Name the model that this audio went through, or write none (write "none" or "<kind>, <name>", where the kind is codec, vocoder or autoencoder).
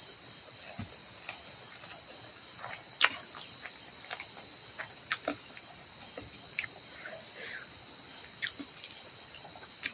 none